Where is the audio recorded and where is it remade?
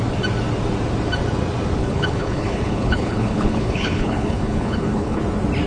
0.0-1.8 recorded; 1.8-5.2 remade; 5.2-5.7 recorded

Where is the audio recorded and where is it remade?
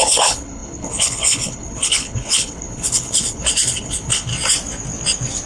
0.0-4.3 remade; 4.3-5.5 recorded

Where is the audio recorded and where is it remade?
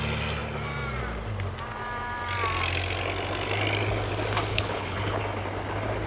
0.0-4.5 recorded; 4.5-5.2 remade; 5.2-6.1 recorded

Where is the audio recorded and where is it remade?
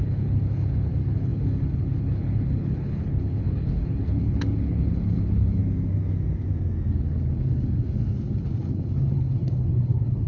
0.0-5.6 remade; 5.6-6.9 recorded; 6.9-10.3 remade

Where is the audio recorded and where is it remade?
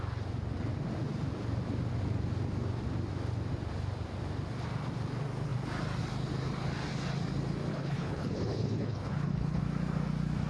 0.0-7.7 recorded; 7.7-9.6 remade; 9.6-10.5 recorded